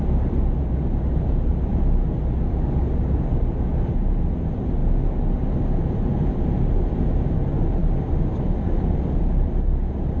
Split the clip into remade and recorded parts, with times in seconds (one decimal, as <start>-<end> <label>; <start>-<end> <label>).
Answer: 0.0-10.2 recorded